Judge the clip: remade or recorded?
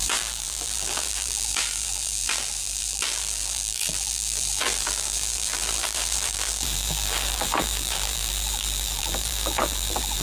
remade